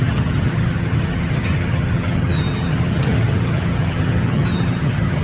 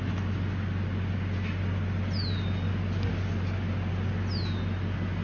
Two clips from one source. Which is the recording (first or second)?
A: second